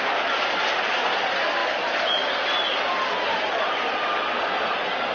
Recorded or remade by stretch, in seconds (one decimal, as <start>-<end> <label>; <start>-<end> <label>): 0.0-5.1 recorded